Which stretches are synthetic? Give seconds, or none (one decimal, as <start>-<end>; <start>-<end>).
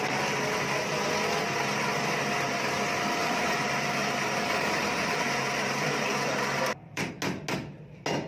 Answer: 3.2-7.1